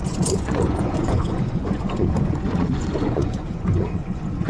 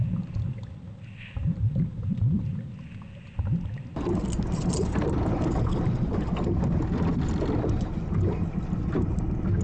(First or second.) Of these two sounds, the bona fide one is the second